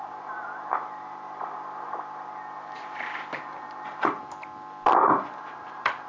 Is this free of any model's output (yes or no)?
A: no